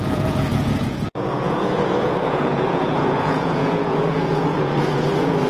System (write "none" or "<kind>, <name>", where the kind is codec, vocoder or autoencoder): vocoder, Vocos